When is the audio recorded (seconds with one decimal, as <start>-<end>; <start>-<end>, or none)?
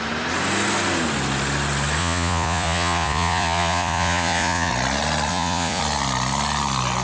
0.0-2.0; 4.7-5.3; 5.8-7.0